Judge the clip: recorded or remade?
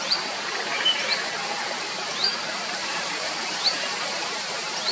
remade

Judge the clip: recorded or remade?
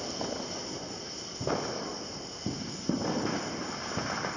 recorded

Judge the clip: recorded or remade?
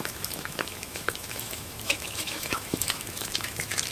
remade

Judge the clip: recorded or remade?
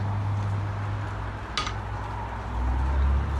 recorded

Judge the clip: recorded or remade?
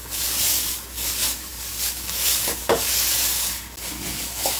remade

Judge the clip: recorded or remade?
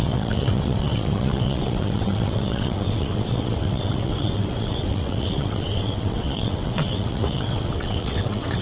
remade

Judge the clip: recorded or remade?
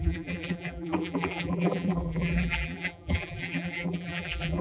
remade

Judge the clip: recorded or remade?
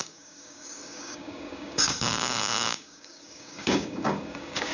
remade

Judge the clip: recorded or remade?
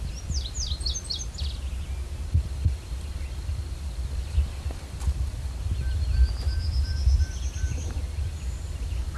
recorded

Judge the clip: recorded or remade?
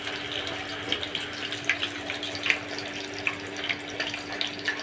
recorded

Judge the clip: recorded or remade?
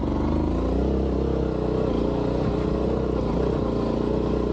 recorded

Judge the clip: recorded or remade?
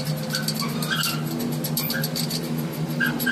recorded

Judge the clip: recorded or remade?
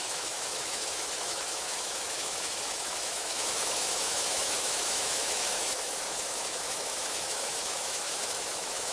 remade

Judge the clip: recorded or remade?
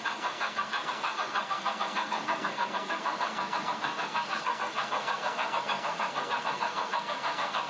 remade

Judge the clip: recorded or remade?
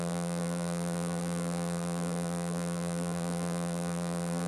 remade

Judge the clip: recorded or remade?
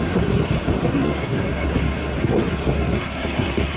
remade